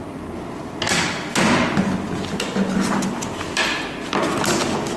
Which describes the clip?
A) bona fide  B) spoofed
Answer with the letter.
A